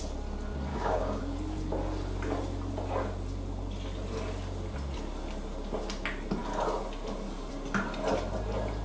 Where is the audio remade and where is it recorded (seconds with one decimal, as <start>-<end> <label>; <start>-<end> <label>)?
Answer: 0.0-0.7 recorded; 0.7-1.2 remade; 1.2-8.8 recorded